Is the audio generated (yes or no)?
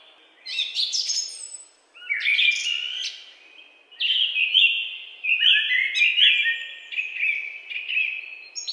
no